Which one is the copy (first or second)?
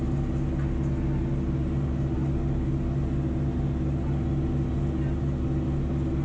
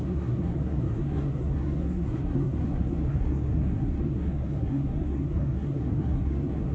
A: second